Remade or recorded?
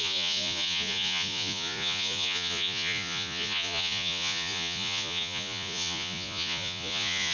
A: remade